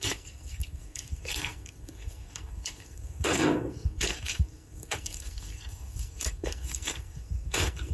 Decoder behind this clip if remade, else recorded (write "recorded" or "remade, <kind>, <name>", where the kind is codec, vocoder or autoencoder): remade, codec, SNAC